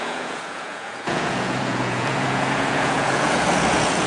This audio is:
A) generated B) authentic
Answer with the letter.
A